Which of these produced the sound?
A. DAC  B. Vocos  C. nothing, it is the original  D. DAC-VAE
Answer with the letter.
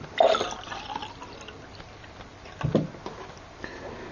C